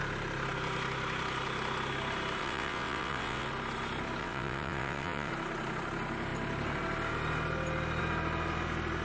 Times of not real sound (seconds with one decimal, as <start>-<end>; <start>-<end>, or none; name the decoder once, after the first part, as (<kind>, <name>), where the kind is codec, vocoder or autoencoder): 2.4-3.5 (vocoder, WaveNeXt); 4.2-5.3